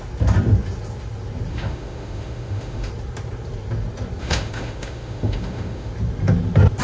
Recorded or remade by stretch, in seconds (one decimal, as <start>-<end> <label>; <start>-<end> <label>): 0.0-1.5 recorded; 1.5-2.9 remade; 2.9-4.2 recorded; 4.2-5.9 remade; 5.9-6.8 recorded